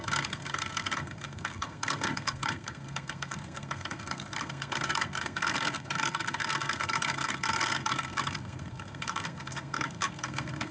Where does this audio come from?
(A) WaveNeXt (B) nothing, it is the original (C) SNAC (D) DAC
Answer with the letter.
C